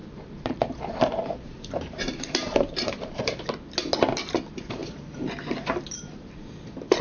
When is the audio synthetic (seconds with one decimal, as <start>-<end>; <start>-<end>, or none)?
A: 0.0-3.4; 4.8-6.3